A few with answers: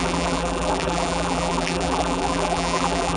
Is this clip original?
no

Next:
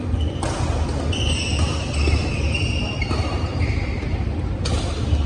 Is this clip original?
yes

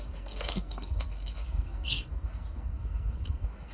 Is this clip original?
no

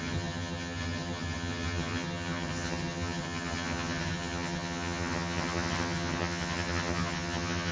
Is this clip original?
no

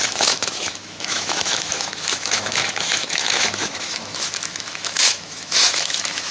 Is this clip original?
no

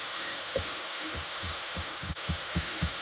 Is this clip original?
no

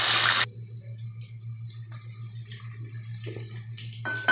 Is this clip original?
yes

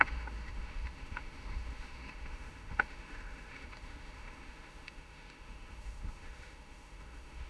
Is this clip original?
no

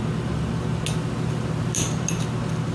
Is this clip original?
yes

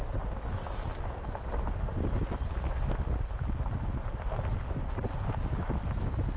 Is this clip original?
yes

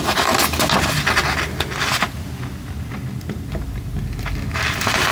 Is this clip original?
yes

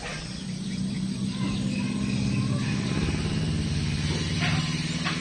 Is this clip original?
yes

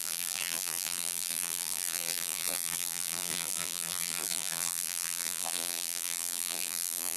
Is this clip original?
no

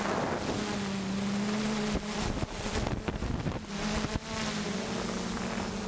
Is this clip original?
yes